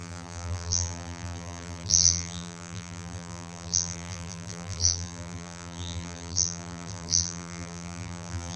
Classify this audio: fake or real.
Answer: fake